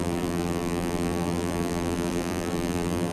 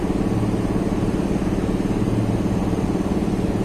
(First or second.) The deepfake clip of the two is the first